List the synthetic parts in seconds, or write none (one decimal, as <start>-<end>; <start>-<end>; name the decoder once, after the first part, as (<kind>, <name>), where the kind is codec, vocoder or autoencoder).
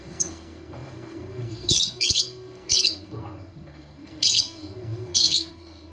0.0-5.9 (codec, SNAC)